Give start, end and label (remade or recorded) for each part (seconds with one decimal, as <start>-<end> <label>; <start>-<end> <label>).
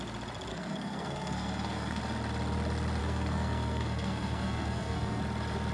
0.0-0.5 recorded; 0.5-2.0 remade; 2.0-3.0 recorded; 3.0-5.2 remade; 5.2-5.7 recorded